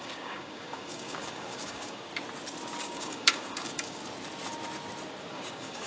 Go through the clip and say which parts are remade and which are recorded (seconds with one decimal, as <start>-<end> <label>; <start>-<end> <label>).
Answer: 0.0-2.1 remade; 2.1-2.8 recorded; 2.8-4.0 remade; 4.0-5.3 recorded; 5.3-5.9 remade

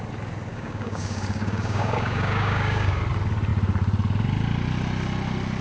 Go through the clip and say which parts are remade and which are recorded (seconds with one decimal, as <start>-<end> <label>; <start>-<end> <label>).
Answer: 0.0-0.5 recorded; 0.5-3.0 remade; 3.0-5.6 recorded

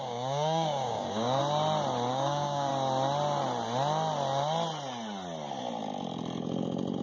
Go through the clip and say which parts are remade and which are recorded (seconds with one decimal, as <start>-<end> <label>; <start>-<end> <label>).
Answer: 0.0-1.4 remade; 1.4-2.1 recorded; 2.1-2.7 remade; 2.7-7.0 recorded

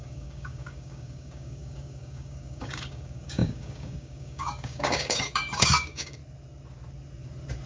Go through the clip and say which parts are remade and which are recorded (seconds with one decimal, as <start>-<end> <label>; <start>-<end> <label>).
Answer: 0.0-6.2 remade; 6.2-7.7 recorded

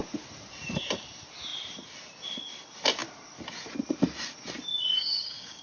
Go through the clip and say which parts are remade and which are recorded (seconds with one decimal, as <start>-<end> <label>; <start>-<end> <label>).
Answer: 0.0-4.7 recorded; 4.7-5.6 remade

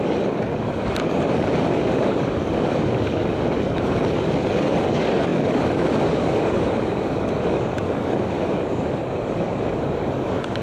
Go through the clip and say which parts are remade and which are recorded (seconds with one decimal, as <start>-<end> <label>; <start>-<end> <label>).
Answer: 0.0-10.6 remade